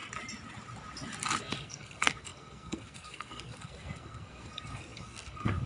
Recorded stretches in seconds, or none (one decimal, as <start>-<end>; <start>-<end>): 0.0-1.4